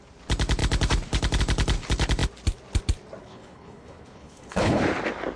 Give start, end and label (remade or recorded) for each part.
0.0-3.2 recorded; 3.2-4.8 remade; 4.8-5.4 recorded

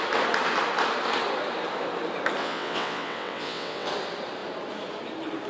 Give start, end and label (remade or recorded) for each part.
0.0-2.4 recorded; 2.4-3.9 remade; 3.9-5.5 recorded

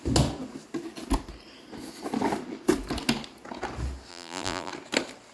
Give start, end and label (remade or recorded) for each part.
0.0-4.1 recorded; 4.1-4.7 remade; 4.7-5.3 recorded

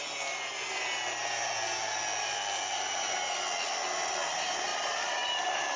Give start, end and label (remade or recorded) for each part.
0.0-4.7 recorded; 4.7-5.8 remade